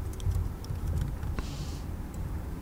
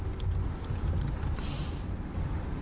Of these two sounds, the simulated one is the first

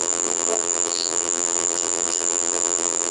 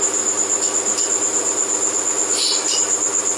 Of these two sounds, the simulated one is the first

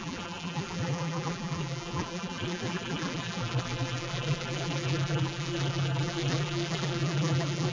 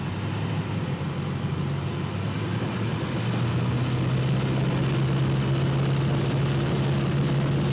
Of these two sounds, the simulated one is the first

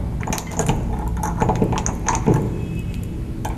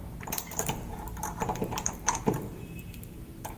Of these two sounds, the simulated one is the second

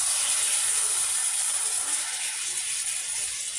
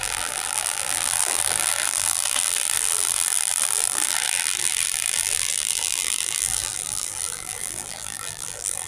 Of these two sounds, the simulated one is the second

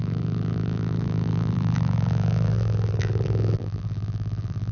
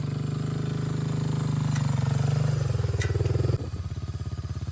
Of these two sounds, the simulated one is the first